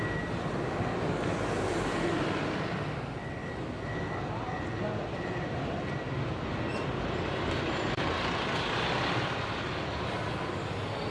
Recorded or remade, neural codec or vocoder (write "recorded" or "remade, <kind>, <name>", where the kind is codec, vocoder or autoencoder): recorded